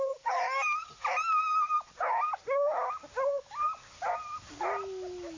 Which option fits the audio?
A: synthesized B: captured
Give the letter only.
B